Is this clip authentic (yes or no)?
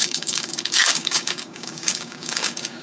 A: no